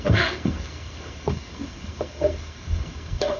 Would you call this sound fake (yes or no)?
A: yes